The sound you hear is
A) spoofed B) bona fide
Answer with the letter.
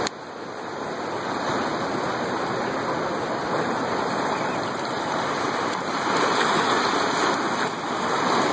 B